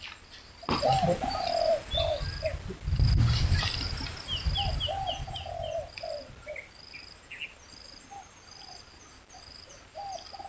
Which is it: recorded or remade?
recorded